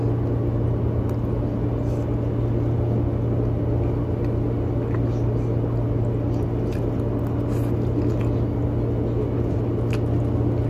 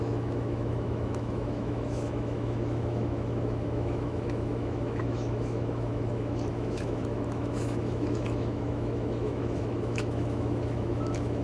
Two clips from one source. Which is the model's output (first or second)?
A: second